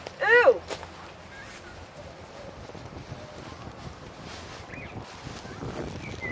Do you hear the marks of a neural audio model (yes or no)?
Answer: no